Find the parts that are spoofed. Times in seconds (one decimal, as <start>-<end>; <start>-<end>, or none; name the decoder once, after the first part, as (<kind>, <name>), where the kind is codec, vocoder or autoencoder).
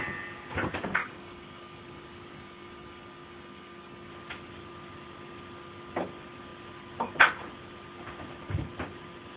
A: 1.0-4.1 (codec, DAC)